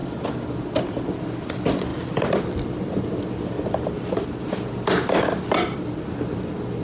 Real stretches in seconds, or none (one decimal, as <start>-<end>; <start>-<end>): 0.0-0.8

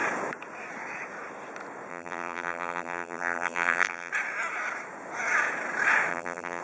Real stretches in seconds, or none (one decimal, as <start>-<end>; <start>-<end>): 0.0-1.9; 4.1-6.1

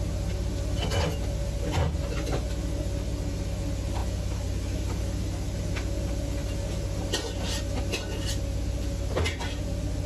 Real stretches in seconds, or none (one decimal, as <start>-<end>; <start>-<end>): 0.0-10.1